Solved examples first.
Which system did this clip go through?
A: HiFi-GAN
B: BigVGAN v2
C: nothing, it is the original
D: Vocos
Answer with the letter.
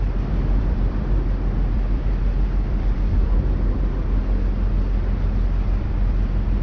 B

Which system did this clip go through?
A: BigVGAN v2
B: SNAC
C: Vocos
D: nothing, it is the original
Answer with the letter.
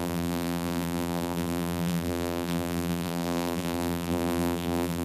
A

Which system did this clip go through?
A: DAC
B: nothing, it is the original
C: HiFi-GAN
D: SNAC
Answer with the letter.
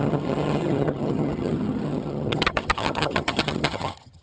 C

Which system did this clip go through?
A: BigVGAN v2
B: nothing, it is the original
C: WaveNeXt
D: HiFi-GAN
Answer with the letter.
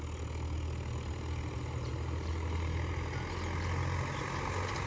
B